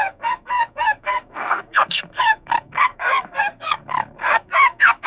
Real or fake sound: fake